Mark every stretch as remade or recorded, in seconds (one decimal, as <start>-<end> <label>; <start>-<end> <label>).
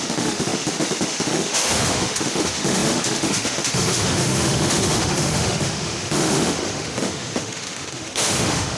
0.0-8.8 remade